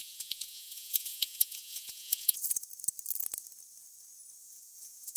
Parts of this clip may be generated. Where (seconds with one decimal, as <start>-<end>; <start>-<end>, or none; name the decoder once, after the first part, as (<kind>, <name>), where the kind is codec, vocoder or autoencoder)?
0.0-2.7 (vocoder, Vocos); 4.4-5.2